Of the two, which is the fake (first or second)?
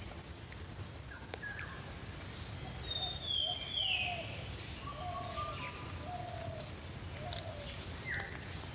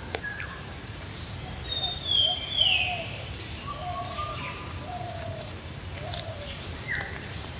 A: second